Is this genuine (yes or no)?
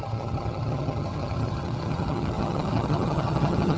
no